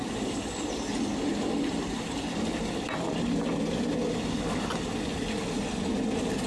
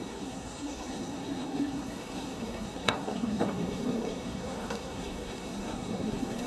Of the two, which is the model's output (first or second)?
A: second